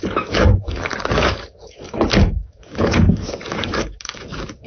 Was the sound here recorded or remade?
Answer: remade